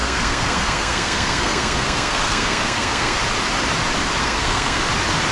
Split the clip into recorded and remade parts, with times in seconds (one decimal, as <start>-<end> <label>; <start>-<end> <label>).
0.0-3.2 remade; 3.2-4.2 recorded; 4.2-4.8 remade; 4.8-5.3 recorded